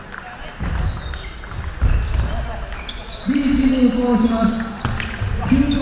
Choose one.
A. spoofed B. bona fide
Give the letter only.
B